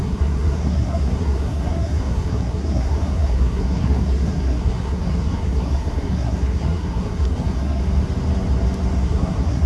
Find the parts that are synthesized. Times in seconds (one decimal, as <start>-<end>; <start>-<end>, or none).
0.0-7.8; 9.0-9.7